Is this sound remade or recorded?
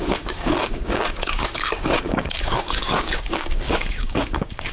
remade